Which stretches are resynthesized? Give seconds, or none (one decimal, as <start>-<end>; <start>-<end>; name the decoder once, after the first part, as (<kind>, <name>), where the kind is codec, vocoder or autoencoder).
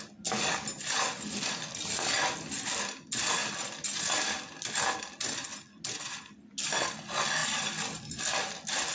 7.4-8.4 (vocoder, BigVGAN v2)